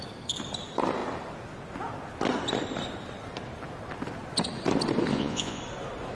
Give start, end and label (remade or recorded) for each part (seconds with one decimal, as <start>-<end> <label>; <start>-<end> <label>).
0.0-5.1 recorded; 5.1-5.6 remade; 5.6-6.1 recorded